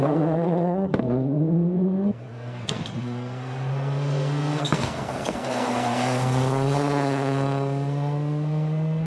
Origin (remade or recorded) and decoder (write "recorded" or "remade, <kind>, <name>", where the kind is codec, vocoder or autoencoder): remade, codec, SNAC